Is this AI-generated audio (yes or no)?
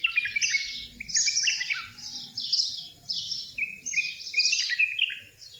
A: no